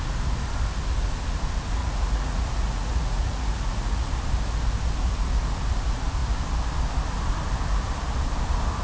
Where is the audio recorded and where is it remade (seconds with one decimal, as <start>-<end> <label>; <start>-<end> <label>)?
0.0-1.8 recorded; 1.8-4.1 remade; 4.1-8.8 recorded